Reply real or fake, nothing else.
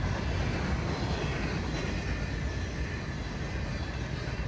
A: real